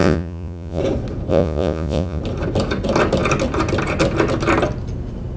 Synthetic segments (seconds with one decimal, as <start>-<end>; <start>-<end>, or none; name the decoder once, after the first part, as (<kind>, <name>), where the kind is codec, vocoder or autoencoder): 0.0-0.8 (vocoder, Vocos); 1.3-2.2